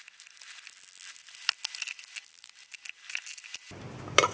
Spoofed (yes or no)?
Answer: no